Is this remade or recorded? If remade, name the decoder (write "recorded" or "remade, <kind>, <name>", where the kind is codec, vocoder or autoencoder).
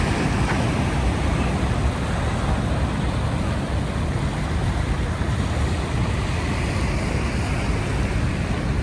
recorded